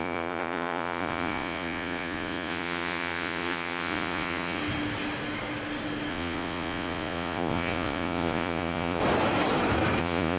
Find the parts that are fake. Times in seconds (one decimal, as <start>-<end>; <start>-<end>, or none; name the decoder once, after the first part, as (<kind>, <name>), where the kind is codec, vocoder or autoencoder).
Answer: 0.0-4.6 (vocoder, Vocos); 6.1-9.0; 10.0-10.4

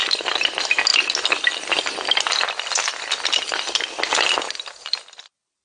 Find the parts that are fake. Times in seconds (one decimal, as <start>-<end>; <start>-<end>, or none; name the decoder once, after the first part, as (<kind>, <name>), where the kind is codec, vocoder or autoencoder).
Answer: 0.0-0.5 (vocoder, BigVGAN v2)

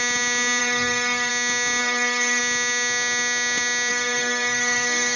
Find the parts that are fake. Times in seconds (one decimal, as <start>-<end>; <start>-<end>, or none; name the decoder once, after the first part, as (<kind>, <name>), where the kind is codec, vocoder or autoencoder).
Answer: 0.6-1.3 (codec, SNAC); 1.8-2.4; 3.9-5.2

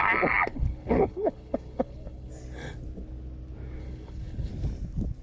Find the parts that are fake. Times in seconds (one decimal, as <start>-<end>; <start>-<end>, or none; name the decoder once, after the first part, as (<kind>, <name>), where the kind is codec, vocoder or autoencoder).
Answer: 0.5-2.3 (codec, HILCodec); 3.8-4.5

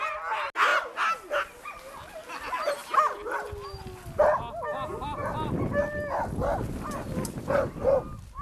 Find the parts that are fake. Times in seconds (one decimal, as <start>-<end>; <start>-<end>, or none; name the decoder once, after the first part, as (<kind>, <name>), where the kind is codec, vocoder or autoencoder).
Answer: none

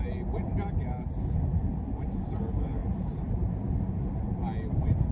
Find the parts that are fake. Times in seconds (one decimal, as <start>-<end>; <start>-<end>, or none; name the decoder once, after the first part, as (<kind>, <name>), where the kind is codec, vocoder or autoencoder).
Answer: 2.8-4.4 (vocoder, BigVGAN v2)